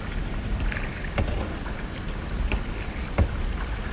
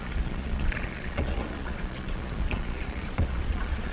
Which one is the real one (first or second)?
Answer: first